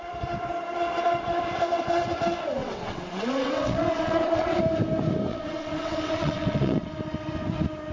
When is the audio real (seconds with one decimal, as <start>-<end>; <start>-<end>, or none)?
0.0-2.6; 4.5-5.3; 6.9-7.9

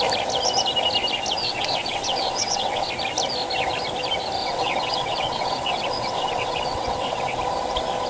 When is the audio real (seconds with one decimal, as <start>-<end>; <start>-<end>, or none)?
0.0-1.4; 2.9-4.4; 7.4-8.1

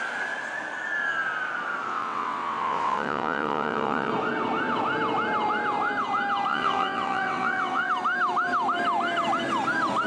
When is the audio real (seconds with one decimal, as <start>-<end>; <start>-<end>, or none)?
0.0-1.9; 4.1-6.5; 7.9-10.1

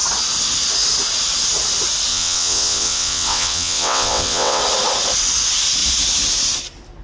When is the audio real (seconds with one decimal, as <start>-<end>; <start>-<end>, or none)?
0.0-2.1; 4.6-7.0

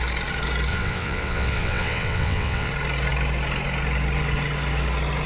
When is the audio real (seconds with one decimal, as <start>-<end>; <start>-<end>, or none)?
0.0-0.7; 2.7-5.3

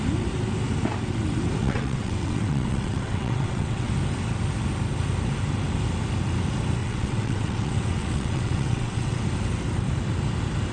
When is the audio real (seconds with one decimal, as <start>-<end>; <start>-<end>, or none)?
0.0-1.6; 3.9-6.8; 9.2-10.7

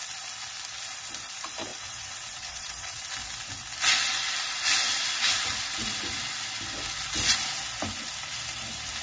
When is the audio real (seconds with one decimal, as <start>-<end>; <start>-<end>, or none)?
0.0-1.7; 3.1-9.0

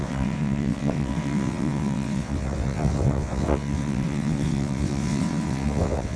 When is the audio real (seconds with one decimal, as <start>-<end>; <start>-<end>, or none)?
none